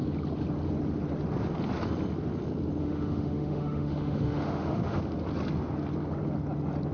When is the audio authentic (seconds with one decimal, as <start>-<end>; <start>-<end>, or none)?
0.0-2.8; 5.0-6.9